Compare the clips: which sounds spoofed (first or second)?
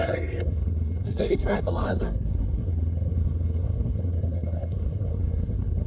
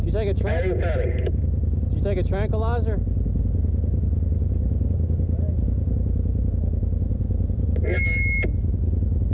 first